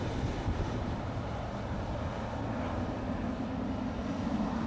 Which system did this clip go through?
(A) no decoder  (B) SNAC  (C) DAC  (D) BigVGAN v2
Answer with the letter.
A